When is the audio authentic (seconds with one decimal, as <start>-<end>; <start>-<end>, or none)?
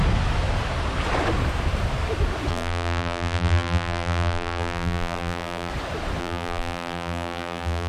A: 0.0-2.5; 5.7-6.2